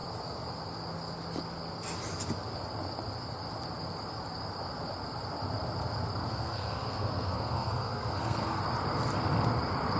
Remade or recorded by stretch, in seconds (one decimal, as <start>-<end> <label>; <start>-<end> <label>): 0.0-6.3 recorded; 6.3-8.6 remade; 8.6-10.0 recorded